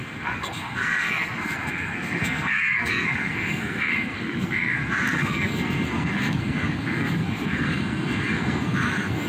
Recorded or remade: remade